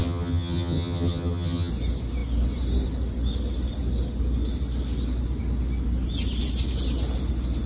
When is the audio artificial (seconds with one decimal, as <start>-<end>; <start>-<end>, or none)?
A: 0.0-1.7